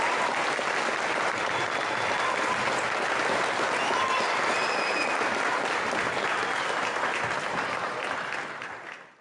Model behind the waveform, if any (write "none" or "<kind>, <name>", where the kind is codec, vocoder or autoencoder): none